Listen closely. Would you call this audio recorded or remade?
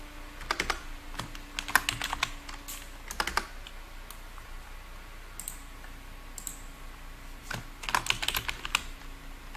recorded